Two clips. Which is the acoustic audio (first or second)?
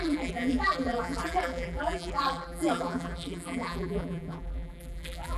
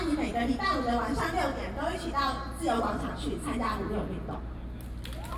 second